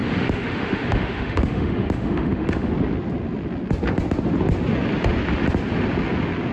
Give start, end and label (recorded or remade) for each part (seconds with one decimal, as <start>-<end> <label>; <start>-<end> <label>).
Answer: 0.0-2.7 remade; 2.7-6.5 recorded